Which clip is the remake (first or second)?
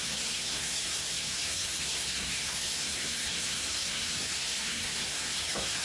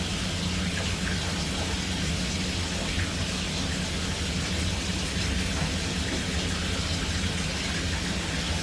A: first